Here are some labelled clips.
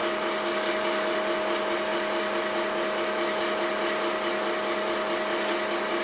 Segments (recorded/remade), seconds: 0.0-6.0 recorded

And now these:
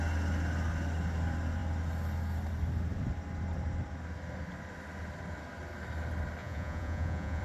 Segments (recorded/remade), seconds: 0.0-6.4 recorded; 6.4-7.4 remade

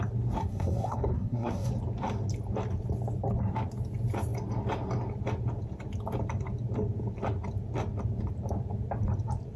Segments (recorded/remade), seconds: 0.0-0.4 recorded; 0.4-1.7 remade; 1.7-9.6 recorded

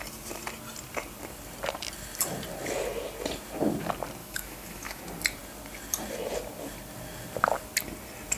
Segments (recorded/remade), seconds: 0.0-4.2 recorded; 4.2-5.0 remade; 5.0-8.4 recorded

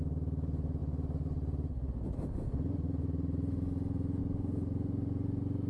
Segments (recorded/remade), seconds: 0.0-5.7 recorded

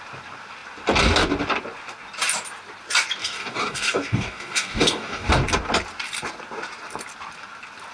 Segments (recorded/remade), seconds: 0.0-3.2 recorded; 3.2-5.3 remade; 5.3-7.9 recorded

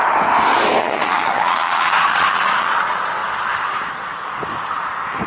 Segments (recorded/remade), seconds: 0.0-0.8 recorded; 0.8-3.2 remade; 3.2-5.3 recorded